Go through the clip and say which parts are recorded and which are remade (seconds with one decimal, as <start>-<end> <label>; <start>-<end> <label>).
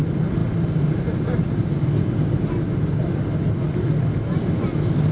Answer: 0.0-5.1 recorded